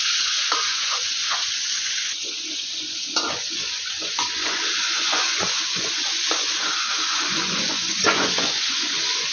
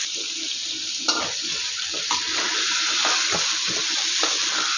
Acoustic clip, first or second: second